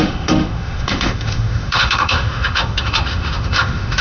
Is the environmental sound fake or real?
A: fake